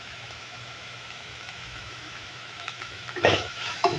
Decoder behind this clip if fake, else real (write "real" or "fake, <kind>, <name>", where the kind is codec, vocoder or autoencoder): fake, autoencoder, DAC-VAE